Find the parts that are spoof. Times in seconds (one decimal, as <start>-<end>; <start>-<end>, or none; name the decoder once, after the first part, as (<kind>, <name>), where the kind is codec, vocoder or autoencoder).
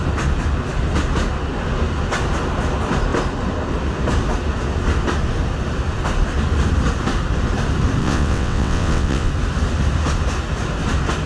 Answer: 8.0-9.3 (vocoder, WaveNeXt)